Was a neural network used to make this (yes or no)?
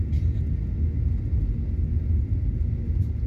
no